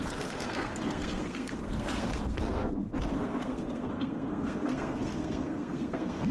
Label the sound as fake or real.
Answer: fake